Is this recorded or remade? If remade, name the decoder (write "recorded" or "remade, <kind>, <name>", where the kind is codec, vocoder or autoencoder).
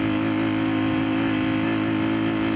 recorded